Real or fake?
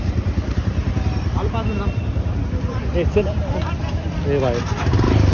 real